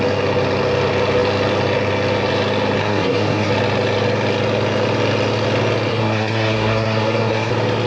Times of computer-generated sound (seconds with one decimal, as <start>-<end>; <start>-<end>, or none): 2.8-3.5; 5.9-7.5